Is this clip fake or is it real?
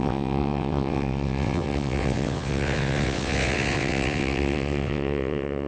fake